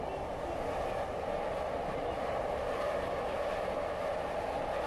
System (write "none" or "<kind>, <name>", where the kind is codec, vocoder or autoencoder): none